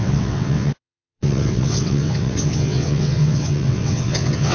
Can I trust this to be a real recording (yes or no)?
no